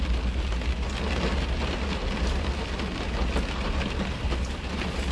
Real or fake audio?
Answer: real